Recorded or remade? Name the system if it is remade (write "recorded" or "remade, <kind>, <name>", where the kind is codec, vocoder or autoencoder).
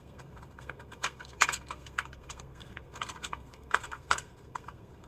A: remade, codec, SNAC